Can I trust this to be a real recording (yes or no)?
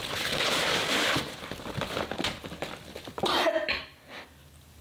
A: no